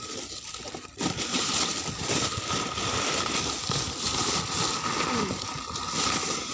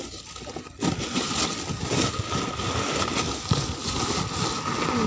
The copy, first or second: first